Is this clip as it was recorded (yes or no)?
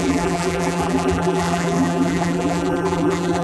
no